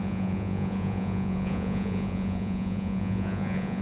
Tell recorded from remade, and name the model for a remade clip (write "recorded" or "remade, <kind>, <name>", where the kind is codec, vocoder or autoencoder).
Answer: remade, vocoder, Vocos